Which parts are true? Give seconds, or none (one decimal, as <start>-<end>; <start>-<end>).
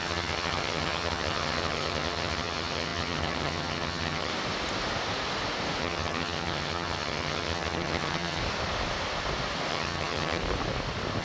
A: 4.3-5.8; 8.4-9.7; 10.4-11.2